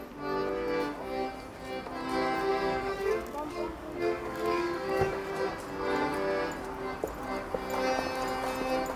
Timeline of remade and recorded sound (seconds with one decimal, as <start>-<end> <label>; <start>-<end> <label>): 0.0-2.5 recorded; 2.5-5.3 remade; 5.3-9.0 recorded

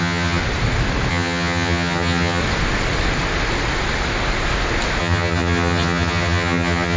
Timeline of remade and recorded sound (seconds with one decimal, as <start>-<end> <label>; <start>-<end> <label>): 0.0-0.4 remade; 0.4-1.1 recorded; 1.1-2.4 remade; 2.4-5.0 recorded; 5.0-7.0 remade

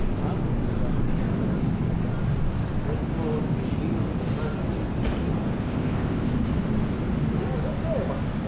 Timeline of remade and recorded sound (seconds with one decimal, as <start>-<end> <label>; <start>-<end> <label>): 0.0-5.6 recorded; 5.6-6.3 remade; 6.3-8.5 recorded